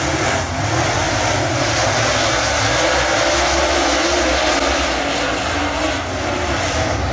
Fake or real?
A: real